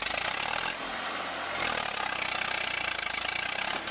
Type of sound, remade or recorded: recorded